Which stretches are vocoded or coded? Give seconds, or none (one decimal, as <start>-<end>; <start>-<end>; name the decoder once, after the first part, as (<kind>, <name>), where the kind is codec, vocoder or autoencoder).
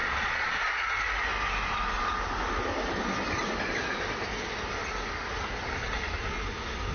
0.0-0.6 (vocoder, Vocos)